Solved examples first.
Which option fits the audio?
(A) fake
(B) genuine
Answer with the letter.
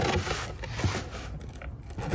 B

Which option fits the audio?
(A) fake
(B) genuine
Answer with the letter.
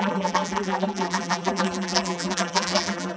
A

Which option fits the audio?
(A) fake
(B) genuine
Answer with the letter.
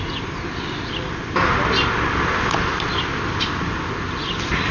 B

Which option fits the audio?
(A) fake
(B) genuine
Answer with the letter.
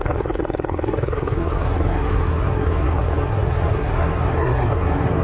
A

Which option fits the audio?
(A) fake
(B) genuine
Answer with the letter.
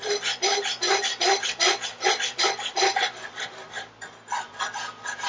B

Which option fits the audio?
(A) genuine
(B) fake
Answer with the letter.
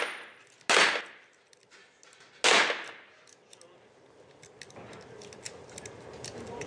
A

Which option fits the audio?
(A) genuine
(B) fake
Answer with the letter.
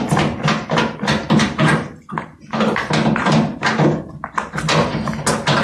A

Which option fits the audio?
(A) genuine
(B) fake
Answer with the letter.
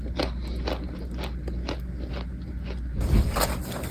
A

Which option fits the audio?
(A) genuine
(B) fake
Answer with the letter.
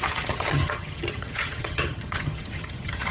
B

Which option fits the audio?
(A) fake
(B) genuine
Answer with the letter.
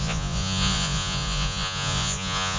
A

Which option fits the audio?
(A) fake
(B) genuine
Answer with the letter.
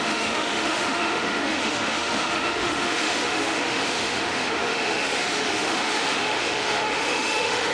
A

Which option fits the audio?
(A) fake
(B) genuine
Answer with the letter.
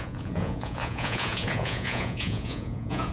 A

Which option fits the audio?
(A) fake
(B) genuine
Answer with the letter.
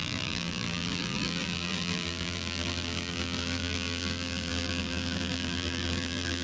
A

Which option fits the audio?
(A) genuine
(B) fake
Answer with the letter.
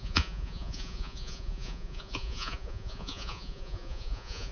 B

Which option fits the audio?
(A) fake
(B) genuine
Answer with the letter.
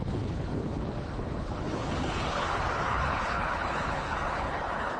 A